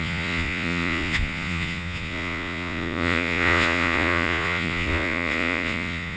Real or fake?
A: fake